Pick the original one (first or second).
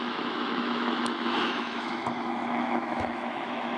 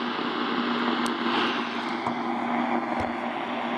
second